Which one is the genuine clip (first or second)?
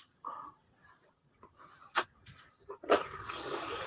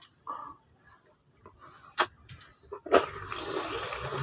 second